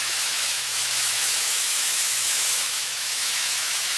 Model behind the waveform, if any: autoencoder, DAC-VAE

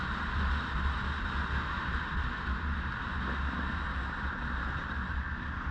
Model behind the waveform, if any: none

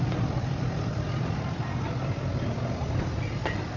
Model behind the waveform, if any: vocoder, BigVGAN v2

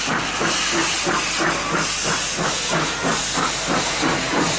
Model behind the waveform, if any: none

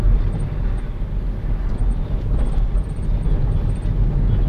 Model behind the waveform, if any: none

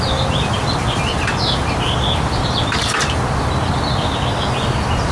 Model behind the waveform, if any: none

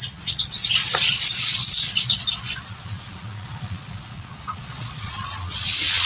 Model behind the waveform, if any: vocoder, Vocos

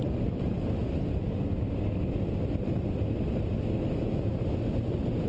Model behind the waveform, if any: none